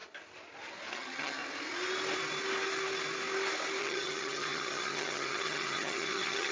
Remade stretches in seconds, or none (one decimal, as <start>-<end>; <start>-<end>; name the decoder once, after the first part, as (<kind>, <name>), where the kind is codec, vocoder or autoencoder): 0.9-1.4 (vocoder, HiFi-GAN); 3.8-6.5